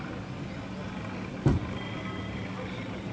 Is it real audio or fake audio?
real